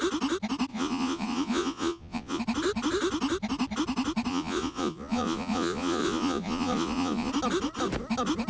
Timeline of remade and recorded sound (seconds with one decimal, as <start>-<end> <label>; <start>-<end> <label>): 0.0-0.7 recorded; 0.7-2.4 remade; 2.4-4.3 recorded; 4.3-7.3 remade; 7.3-8.5 recorded